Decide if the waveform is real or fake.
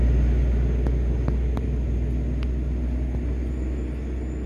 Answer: real